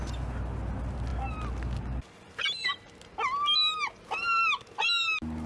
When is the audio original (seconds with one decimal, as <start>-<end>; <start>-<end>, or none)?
0.0-5.5